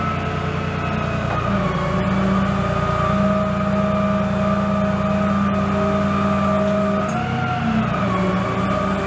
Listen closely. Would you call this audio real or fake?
real